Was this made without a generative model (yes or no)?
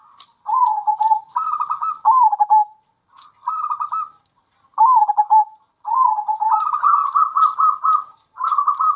yes